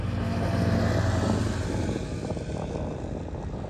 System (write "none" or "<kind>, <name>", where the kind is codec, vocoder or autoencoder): none